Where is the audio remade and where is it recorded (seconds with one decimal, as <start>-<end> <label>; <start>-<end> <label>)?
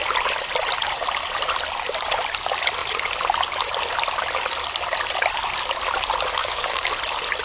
0.0-6.4 recorded; 6.4-6.9 remade; 6.9-7.4 recorded